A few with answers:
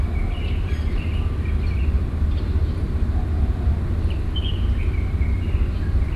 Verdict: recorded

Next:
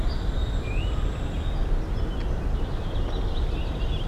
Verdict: recorded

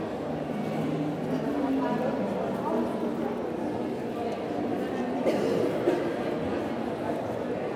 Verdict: recorded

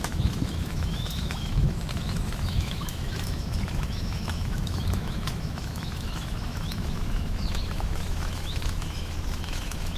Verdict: remade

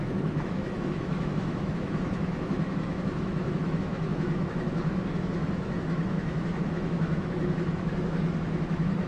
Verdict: remade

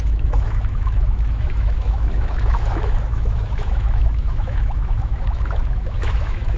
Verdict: remade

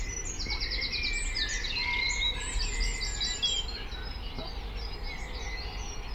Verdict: recorded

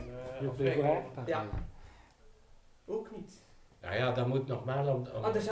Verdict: recorded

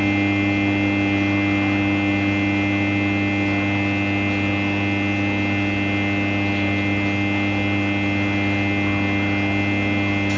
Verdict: recorded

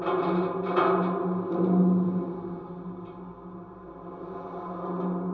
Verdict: recorded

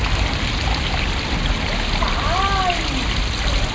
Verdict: recorded